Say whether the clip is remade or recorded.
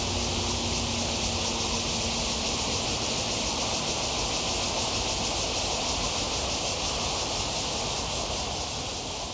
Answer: recorded